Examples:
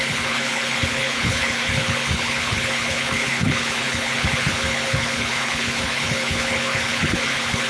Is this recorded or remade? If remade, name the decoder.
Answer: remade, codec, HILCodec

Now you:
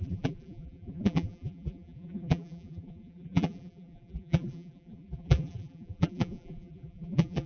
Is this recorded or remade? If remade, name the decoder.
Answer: remade, vocoder, BigVGAN v2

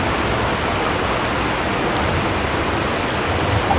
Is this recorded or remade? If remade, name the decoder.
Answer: recorded